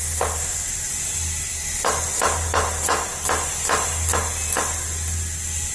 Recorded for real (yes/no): yes